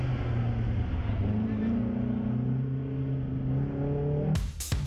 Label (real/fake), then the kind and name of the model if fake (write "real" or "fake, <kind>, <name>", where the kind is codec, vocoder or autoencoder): real